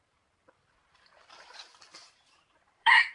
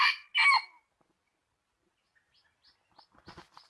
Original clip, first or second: second